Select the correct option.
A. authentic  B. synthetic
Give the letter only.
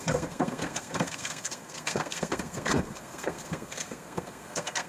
B